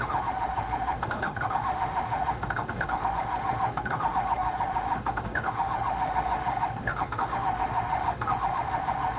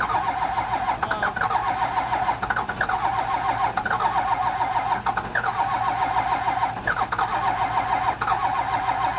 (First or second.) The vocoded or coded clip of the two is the first